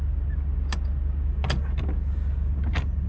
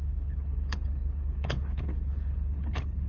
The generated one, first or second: second